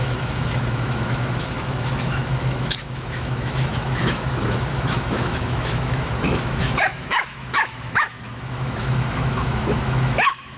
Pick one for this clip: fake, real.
fake